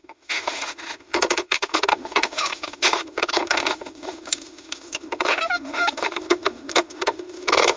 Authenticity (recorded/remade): remade